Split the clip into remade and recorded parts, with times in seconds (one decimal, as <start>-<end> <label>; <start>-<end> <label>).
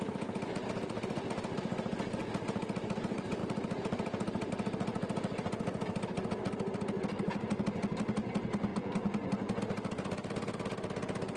0.0-8.7 recorded; 8.7-9.6 remade; 9.6-11.4 recorded